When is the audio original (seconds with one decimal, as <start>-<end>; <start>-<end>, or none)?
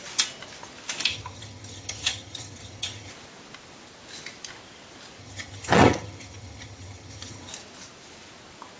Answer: 0.0-1.1; 3.1-5.2; 7.5-8.8